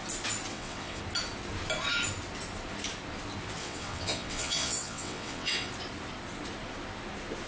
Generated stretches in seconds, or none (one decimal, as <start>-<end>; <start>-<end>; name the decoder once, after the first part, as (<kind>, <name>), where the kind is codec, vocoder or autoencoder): 0.5-1.0 (vocoder, WaveNeXt); 3.6-5.7